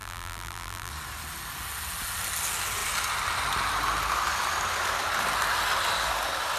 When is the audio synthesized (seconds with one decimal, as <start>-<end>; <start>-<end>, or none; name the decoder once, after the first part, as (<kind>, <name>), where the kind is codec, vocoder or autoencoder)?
0.0-0.9 (vocoder, BigVGAN v2)